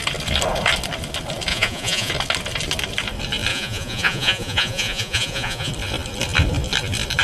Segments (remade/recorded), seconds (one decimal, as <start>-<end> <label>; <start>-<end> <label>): 0.0-1.5 recorded; 1.5-2.1 remade; 2.1-3.5 recorded; 3.5-5.7 remade; 5.7-7.2 recorded